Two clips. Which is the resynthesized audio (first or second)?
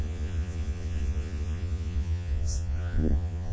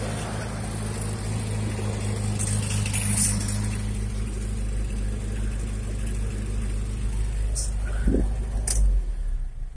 first